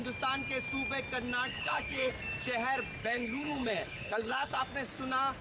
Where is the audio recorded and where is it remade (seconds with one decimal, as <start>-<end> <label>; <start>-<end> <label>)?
0.0-1.5 recorded; 1.5-2.1 remade; 2.1-3.0 recorded; 3.0-4.6 remade; 4.6-5.4 recorded

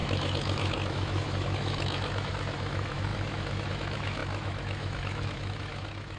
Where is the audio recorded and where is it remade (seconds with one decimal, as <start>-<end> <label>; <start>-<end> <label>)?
0.0-6.2 remade

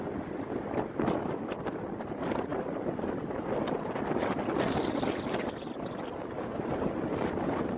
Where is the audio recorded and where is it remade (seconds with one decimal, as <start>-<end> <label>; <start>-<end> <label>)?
0.0-7.8 recorded

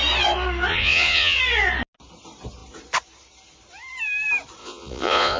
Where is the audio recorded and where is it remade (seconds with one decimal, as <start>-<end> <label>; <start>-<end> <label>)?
0.0-0.7 recorded; 0.7-1.4 remade; 1.4-4.6 recorded; 4.6-5.4 remade

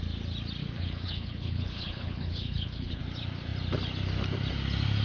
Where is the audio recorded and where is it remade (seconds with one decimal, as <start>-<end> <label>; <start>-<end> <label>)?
0.0-0.6 recorded; 0.6-3.0 remade; 3.0-5.0 recorded

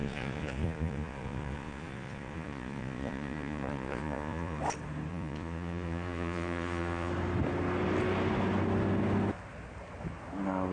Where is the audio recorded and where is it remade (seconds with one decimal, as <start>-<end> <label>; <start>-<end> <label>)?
0.0-4.6 remade; 4.6-5.1 recorded; 5.1-7.1 remade; 7.1-10.7 recorded